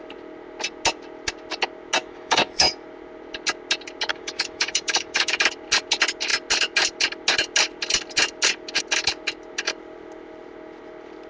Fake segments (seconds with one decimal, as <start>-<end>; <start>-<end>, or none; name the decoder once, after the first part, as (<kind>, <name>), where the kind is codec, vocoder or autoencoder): 2.0-2.7 (autoencoder, DAC-VAE); 4.1-5.4